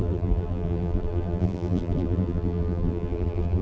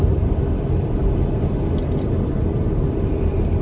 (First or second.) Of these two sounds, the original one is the second